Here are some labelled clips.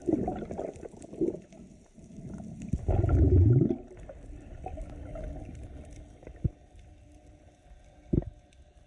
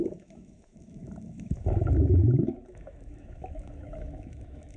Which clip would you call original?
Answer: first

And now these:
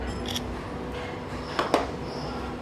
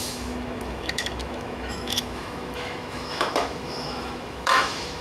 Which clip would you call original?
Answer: first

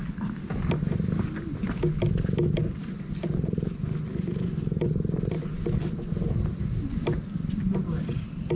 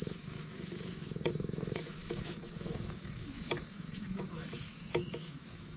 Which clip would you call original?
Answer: first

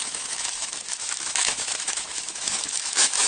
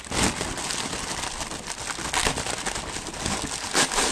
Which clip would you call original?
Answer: second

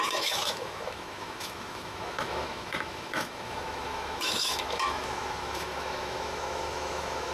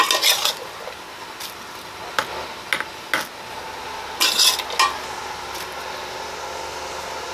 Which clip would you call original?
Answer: second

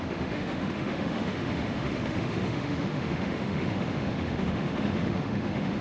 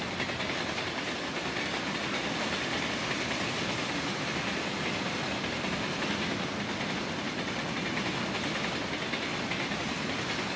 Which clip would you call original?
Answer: second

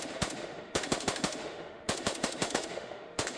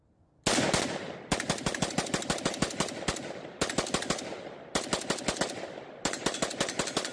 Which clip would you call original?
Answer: second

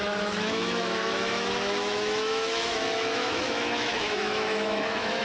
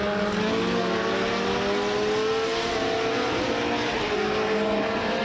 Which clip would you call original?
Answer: second